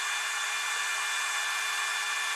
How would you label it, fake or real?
real